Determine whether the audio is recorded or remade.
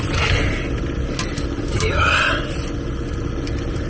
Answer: recorded